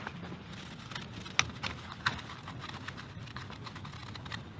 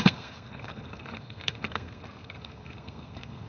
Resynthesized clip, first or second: second